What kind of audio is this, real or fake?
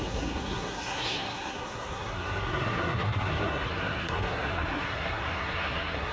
fake